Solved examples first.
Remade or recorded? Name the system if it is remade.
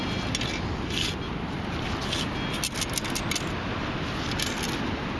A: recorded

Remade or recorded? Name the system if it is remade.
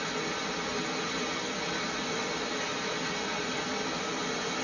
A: recorded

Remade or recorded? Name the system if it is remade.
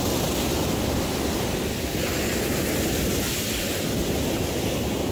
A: recorded